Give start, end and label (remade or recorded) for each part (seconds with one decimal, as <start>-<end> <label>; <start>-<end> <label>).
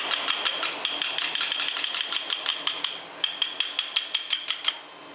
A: 0.0-5.1 recorded